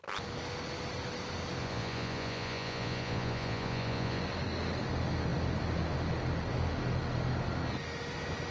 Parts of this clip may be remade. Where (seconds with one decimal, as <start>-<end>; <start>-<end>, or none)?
1.6-4.2